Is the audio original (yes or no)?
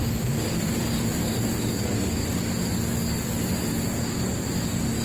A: yes